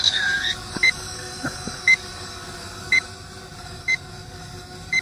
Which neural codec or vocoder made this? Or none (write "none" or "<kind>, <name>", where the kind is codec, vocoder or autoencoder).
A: codec, DAC